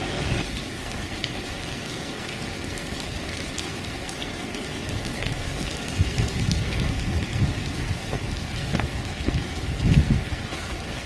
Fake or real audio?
fake